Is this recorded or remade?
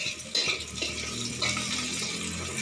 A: recorded